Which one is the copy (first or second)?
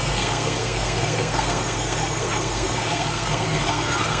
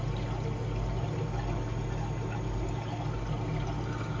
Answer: first